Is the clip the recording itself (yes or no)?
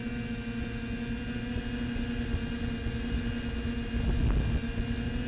yes